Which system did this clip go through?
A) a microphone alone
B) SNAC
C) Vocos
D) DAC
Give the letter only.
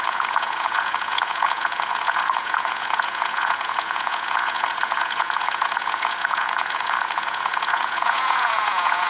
C